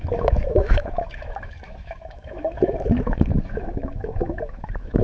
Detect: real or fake fake